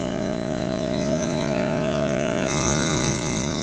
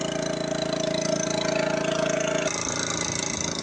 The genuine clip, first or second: second